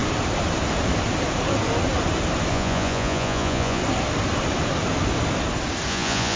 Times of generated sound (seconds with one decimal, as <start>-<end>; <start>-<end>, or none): 2.5-3.8; 5.9-6.4